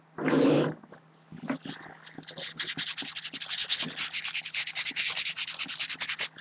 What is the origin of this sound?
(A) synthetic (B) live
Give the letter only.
B